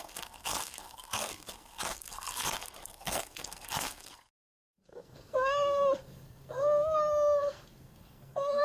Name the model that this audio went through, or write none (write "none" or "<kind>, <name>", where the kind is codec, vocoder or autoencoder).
codec, SNAC